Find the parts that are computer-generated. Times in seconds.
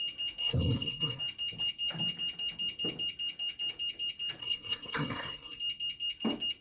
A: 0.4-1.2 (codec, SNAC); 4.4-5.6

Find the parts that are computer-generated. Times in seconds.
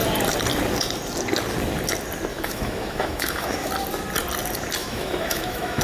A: 2.3-3.7 (autoencoder, DAC-VAE); 4.8-5.8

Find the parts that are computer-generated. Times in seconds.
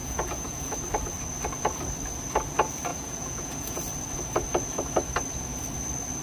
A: 0.0-0.7 (vocoder, Vocos); 2.9-3.8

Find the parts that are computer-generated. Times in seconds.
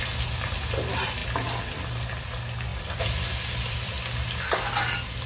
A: 2.7-3.9 (vocoder, BigVGAN v2)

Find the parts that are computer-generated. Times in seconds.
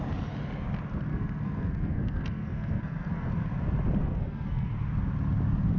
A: 1.1-3.3 (codec, SNAC); 4.0-4.7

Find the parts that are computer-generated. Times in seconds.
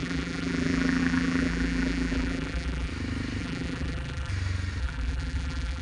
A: 0.0-2.9 (vocoder, BigVGAN v2); 3.4-4.3; 4.8-5.8